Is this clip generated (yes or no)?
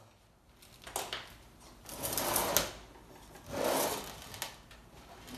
no